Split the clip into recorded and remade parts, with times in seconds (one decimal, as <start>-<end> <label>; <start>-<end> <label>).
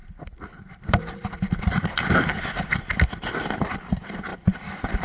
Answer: 0.0-4.3 remade; 4.3-5.0 recorded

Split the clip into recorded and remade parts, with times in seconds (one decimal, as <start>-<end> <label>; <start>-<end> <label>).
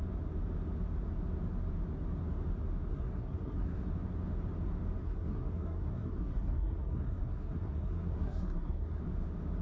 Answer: 0.0-2.9 recorded; 2.9-3.9 remade; 3.9-5.0 recorded; 5.0-9.0 remade; 9.0-9.6 recorded